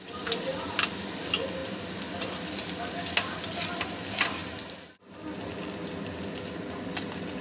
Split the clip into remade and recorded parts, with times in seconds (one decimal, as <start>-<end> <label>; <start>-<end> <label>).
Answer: 0.0-7.4 recorded